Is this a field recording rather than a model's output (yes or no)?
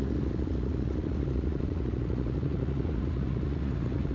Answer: no